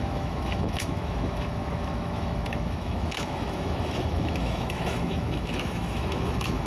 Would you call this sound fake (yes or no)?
yes